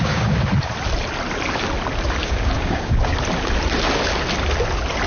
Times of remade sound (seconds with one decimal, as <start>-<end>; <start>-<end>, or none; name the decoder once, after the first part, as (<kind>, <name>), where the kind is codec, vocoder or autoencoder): 0.0-0.5 (codec, DAC); 2.2-3.1